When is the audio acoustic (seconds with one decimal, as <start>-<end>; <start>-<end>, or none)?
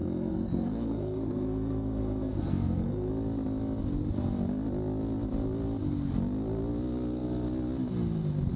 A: 3.1-8.6